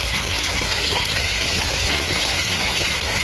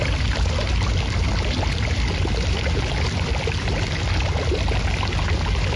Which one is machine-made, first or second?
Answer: first